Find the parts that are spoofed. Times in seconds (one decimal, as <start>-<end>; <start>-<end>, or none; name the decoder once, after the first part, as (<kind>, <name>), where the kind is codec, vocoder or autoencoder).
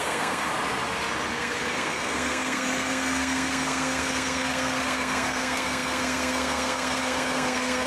0.0-0.5 (codec, SNAC); 1.3-7.9